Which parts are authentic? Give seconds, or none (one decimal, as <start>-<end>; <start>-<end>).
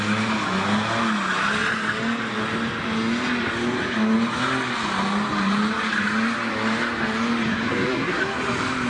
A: 0.0-7.5; 8.2-8.9